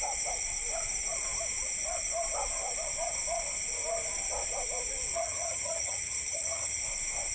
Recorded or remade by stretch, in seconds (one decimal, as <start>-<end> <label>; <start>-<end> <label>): 0.0-5.1 recorded; 5.1-6.8 remade; 6.8-7.3 recorded